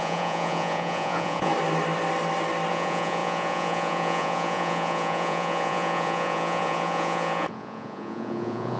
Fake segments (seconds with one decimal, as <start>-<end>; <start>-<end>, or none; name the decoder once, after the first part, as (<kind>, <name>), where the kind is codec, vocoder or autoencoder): 0.0-1.5 (vocoder, Vocos); 2.7-8.8